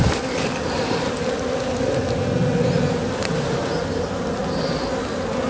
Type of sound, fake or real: real